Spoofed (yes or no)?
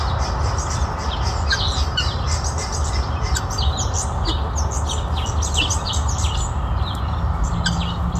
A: no